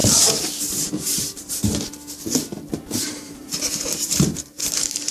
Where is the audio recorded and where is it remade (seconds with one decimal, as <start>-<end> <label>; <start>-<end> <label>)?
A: 0.0-0.6 recorded; 0.6-1.6 remade; 1.6-3.0 recorded; 3.0-5.1 remade